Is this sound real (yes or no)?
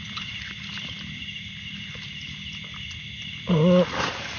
yes